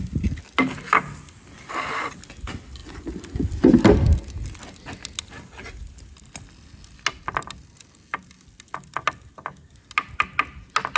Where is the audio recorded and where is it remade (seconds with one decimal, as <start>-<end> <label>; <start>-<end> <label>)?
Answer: 0.0-11.0 recorded